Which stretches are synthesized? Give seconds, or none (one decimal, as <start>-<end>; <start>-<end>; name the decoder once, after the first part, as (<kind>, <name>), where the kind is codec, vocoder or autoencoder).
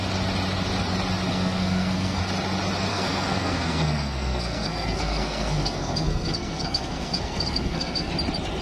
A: 1.3-2.2 (codec, SNAC); 2.9-8.1